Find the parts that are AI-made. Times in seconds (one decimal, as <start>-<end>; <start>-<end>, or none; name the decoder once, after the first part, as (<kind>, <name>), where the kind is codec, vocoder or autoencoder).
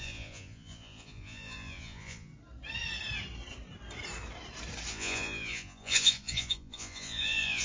0.0-2.3 (vocoder, Vocos); 4.9-7.6